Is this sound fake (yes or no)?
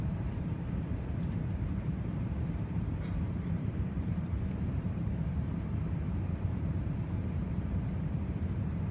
yes